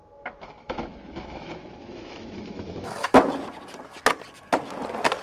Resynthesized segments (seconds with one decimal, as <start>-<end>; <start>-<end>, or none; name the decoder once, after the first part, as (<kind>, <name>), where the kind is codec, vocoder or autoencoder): 0.0-3.1 (autoencoder, DAC-VAE)